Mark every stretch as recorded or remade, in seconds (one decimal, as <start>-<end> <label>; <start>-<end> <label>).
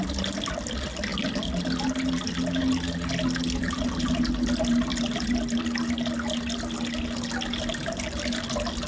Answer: 0.0-8.9 recorded